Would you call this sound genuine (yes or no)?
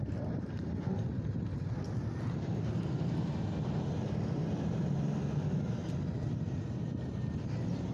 yes